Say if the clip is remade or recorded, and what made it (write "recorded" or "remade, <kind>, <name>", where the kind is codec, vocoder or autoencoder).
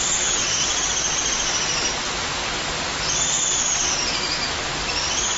recorded